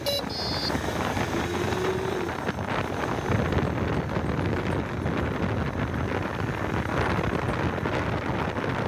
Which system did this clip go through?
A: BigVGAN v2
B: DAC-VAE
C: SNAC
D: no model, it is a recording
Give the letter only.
D